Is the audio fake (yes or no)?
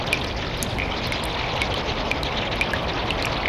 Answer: no